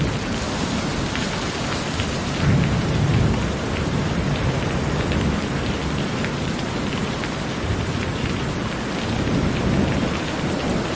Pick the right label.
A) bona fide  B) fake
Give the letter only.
A